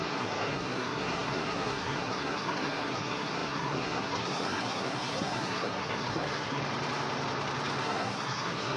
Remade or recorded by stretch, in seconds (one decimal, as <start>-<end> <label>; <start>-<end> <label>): 0.0-6.6 remade; 6.6-7.8 recorded; 7.8-8.8 remade

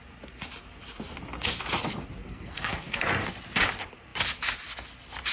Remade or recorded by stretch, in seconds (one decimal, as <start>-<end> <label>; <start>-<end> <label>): 0.0-2.2 recorded; 2.2-3.3 remade; 3.3-5.3 recorded

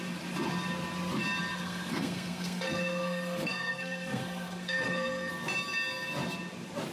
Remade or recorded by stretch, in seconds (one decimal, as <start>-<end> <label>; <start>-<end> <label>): 0.0-1.5 recorded; 1.5-5.3 remade; 5.3-6.9 recorded

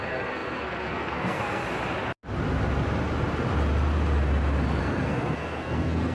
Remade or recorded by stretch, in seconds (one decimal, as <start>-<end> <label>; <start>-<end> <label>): 0.0-1.6 remade; 1.6-4.8 recorded; 4.8-6.1 remade

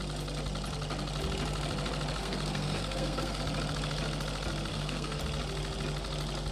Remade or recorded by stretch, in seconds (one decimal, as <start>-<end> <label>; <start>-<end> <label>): 0.0-2.2 recorded; 2.2-3.4 remade; 3.4-4.7 recorded; 4.7-5.2 remade; 5.2-6.5 recorded

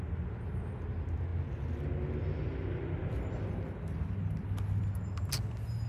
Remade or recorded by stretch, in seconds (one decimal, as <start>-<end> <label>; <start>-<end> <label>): 0.0-5.9 recorded

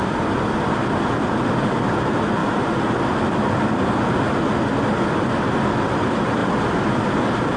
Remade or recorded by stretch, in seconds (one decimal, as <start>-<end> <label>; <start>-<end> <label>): 0.0-7.6 recorded

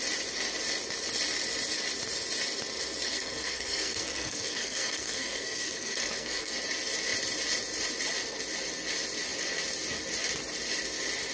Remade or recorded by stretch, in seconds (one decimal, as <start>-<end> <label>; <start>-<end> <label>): 0.0-3.1 recorded; 3.1-6.5 remade; 6.5-11.3 recorded